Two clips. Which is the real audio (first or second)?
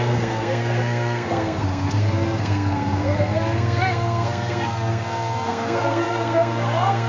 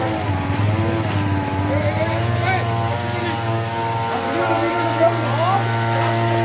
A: second